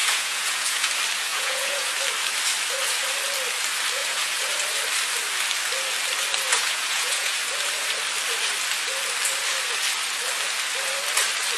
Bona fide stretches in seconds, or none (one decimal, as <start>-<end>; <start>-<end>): 0.9-1.3; 1.9-4.0; 4.5-6.5; 7.4-11.6